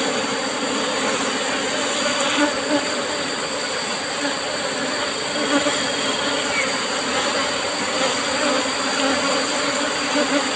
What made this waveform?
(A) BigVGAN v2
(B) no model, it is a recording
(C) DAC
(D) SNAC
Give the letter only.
B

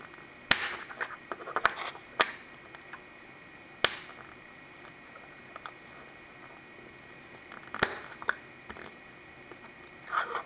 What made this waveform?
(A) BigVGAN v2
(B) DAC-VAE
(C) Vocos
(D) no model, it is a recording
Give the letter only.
D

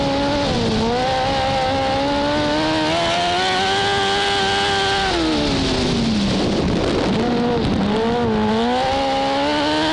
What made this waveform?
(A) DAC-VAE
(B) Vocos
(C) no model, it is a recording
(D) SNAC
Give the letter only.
C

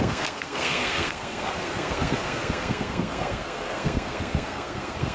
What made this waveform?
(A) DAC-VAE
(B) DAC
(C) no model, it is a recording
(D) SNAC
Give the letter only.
D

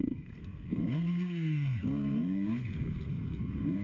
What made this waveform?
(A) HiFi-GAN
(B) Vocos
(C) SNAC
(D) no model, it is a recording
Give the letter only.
C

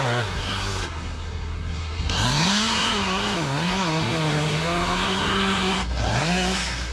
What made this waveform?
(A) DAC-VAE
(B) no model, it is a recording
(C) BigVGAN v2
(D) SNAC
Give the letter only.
D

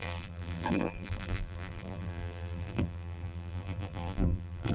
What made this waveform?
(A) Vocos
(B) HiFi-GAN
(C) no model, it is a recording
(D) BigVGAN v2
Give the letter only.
D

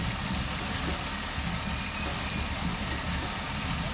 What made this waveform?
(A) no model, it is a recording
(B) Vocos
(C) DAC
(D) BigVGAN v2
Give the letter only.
A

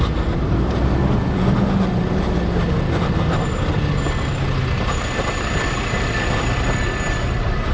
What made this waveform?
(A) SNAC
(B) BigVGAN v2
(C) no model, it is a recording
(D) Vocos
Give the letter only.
C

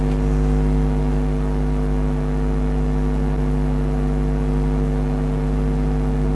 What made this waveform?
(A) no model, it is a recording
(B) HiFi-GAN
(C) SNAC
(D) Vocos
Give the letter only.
A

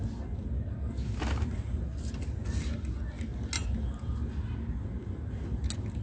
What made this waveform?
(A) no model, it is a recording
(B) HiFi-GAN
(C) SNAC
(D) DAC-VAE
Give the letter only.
A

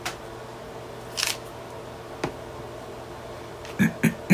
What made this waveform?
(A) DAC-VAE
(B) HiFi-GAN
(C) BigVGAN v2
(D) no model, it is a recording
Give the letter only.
D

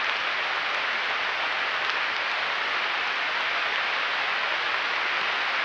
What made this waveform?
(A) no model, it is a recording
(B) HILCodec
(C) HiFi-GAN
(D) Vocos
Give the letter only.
A